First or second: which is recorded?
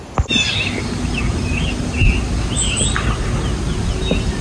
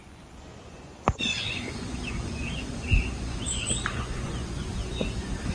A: first